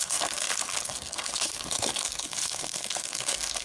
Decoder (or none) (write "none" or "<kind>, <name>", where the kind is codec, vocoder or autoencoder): codec, SNAC